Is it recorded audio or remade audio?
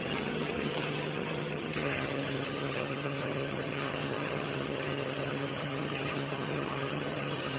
remade